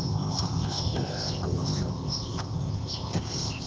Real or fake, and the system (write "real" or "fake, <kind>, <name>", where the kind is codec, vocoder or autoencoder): fake, codec, ZipCodec